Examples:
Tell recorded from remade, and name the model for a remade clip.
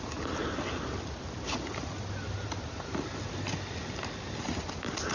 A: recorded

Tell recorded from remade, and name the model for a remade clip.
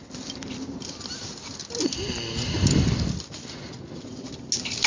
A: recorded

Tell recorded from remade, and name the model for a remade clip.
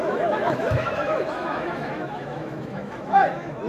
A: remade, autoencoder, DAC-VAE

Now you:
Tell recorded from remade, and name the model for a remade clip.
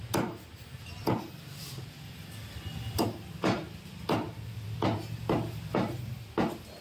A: recorded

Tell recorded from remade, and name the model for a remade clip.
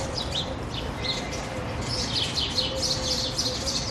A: recorded